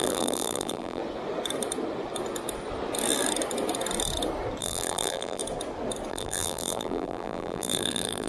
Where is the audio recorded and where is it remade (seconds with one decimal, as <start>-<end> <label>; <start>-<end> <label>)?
0.0-1.0 remade; 1.0-4.6 recorded; 4.6-5.4 remade; 5.4-6.1 recorded; 6.1-8.3 remade